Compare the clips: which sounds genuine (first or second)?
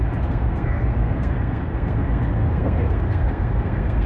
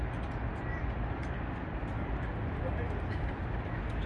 second